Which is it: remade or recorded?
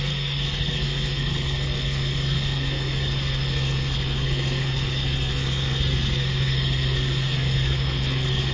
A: remade